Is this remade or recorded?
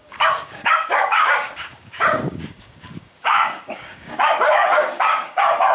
remade